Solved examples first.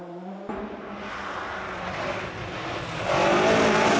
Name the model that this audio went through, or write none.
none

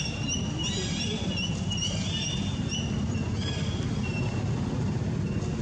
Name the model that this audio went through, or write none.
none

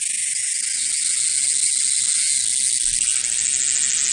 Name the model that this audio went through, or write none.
none